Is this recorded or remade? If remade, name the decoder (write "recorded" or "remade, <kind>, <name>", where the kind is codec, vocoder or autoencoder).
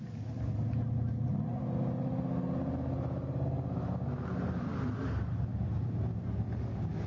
recorded